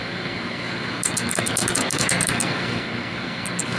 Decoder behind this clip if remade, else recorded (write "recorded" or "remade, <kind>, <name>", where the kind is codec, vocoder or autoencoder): remade, codec, SNAC